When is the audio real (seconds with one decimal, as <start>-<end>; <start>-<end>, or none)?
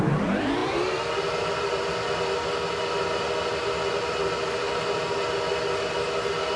0.0-6.6